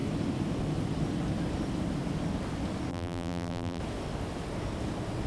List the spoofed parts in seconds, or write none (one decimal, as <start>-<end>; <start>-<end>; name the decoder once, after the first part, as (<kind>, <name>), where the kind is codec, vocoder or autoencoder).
2.9-3.8 (vocoder, BigVGAN v2)